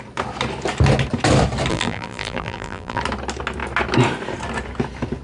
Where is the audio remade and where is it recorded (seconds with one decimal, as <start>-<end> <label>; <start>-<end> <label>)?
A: 0.0-1.7 recorded; 1.7-3.0 remade; 3.0-5.2 recorded